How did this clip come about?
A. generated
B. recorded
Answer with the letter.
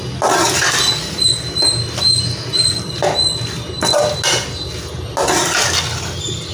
B